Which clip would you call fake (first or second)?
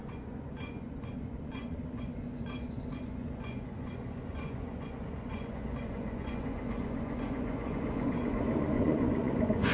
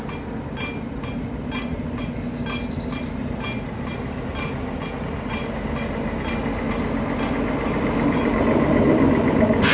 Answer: first